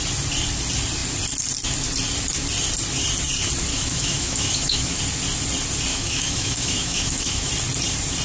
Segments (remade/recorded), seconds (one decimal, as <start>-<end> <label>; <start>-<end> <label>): 0.0-3.7 recorded; 3.7-5.0 remade; 5.0-5.9 recorded; 5.9-7.5 remade; 7.5-8.2 recorded